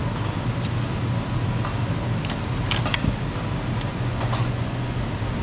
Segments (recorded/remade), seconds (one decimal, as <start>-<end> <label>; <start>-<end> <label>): 0.0-3.9 recorded; 3.9-5.0 remade; 5.0-5.4 recorded